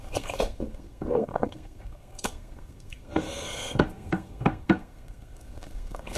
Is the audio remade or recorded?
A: remade